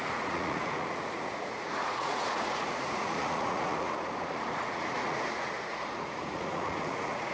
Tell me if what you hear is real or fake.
fake